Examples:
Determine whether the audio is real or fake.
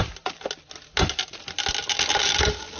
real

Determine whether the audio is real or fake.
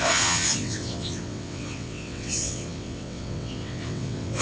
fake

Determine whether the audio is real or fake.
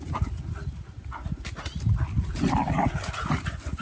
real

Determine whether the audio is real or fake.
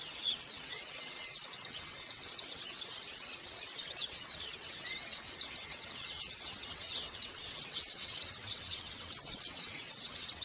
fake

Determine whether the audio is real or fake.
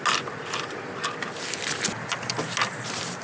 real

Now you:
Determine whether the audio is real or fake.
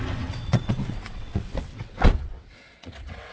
fake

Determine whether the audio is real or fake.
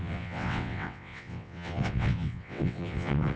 fake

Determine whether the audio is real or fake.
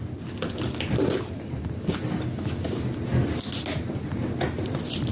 real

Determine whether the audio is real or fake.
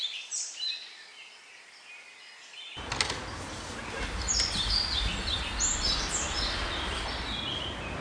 real